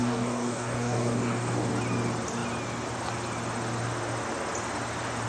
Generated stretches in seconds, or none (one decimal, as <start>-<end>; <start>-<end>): 0.0-1.7